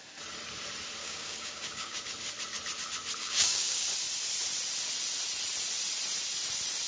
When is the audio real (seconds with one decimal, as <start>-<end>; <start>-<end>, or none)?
0.0-1.0; 2.0-3.2; 3.9-6.9